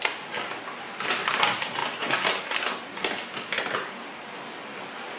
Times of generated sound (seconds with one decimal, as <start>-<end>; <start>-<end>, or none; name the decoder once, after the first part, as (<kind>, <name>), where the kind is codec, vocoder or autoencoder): none